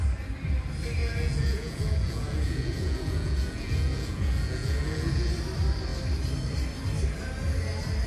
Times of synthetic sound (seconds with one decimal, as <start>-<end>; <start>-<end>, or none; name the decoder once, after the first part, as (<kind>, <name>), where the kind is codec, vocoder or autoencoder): 1.0-5.3 (vocoder, Vocos)